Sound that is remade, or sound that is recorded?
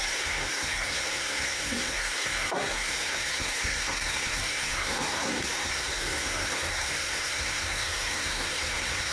remade